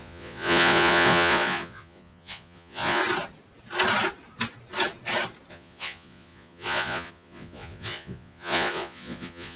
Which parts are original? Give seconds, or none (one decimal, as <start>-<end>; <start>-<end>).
3.0-5.5